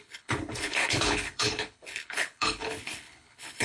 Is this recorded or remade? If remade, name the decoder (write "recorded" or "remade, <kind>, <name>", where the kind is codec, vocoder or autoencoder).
remade, codec, HILCodec